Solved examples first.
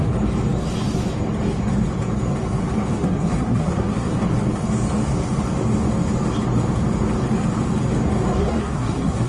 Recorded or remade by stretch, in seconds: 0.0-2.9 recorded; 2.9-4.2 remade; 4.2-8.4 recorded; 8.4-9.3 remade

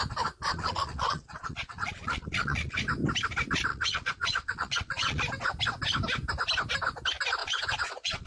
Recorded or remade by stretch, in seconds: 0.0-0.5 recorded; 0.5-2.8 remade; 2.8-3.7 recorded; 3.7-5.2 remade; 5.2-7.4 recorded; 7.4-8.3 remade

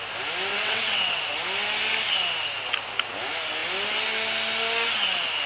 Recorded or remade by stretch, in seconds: 0.0-0.5 recorded; 0.5-1.2 remade; 1.2-5.5 recorded

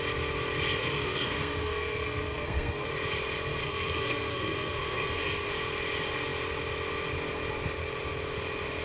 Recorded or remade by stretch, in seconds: 0.0-0.8 recorded; 0.8-2.9 remade; 2.9-3.6 recorded; 3.6-5.5 remade; 5.5-8.8 recorded

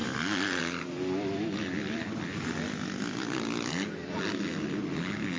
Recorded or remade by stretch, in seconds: 0.0-0.6 remade; 0.6-5.4 recorded

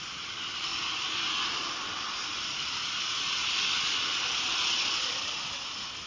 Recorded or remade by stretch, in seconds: 0.0-6.1 recorded